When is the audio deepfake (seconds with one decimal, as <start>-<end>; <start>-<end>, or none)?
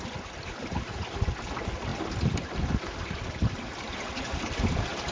none